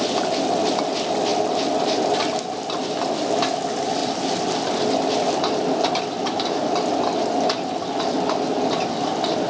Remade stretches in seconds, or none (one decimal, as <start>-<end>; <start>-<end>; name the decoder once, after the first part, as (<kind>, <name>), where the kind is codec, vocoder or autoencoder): none